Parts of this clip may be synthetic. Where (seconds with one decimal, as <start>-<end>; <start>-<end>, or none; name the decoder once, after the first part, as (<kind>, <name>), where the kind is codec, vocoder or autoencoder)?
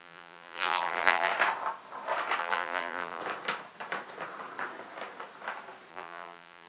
0.0-1.3 (vocoder, BigVGAN v2); 2.4-3.2; 5.9-6.7